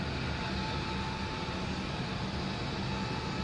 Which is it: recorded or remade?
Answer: recorded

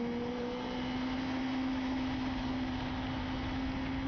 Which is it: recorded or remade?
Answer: recorded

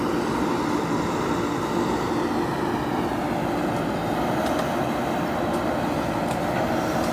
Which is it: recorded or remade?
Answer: recorded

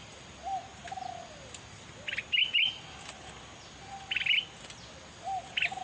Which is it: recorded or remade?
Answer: recorded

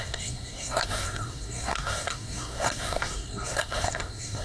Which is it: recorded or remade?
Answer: remade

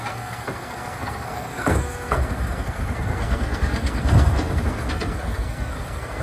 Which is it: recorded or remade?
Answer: remade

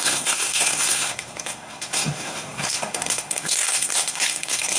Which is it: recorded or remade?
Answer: remade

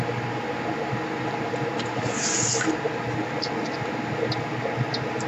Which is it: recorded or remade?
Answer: recorded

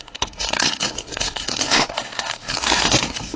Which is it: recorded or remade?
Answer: remade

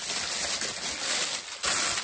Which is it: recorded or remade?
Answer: recorded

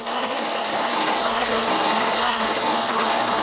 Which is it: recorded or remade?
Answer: remade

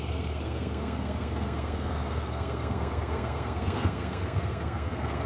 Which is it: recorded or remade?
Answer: remade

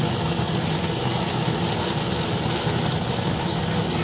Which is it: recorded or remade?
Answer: recorded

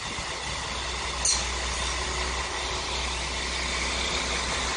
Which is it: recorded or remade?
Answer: recorded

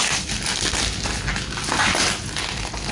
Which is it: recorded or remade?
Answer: recorded